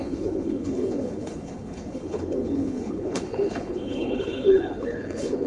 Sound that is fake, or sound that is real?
fake